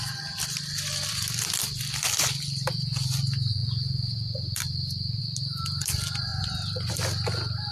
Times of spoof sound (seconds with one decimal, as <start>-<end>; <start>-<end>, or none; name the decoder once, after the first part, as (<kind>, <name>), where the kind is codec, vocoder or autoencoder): none